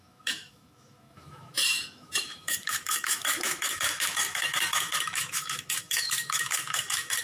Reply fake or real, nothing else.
fake